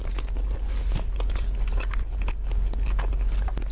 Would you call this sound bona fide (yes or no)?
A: yes